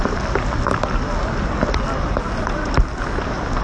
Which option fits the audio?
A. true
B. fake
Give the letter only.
A